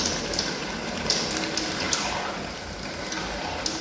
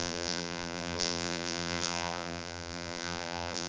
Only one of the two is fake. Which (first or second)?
second